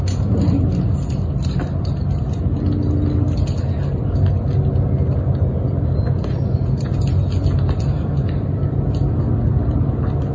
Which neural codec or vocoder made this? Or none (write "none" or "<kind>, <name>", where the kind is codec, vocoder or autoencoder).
none